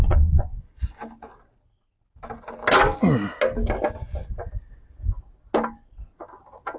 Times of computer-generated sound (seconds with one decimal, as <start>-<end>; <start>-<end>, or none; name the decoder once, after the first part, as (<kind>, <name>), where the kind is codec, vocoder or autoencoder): 0.0-0.6 (vocoder, Vocos)